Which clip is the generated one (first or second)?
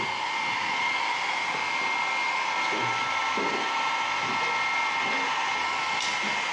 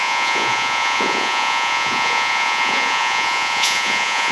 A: second